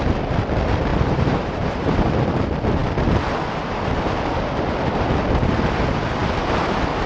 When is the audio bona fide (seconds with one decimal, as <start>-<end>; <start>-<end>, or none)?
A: 0.0-0.9; 2.1-7.1